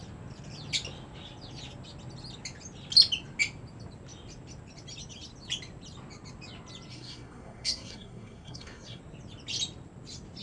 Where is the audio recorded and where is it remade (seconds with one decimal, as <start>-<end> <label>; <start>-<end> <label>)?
0.0-6.9 recorded; 6.9-9.0 remade; 9.0-10.4 recorded